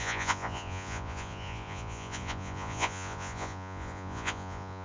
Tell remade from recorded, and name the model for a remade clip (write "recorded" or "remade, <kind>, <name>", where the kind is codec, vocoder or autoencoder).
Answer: remade, vocoder, Vocos